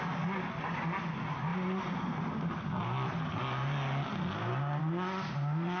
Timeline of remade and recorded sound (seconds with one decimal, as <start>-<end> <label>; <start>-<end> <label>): 0.0-5.8 recorded